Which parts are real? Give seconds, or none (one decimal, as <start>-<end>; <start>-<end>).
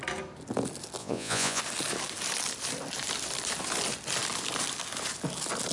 0.0-1.0; 1.6-5.7